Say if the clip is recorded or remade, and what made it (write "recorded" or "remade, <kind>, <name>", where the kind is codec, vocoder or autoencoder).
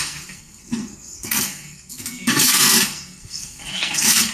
remade, codec, SNAC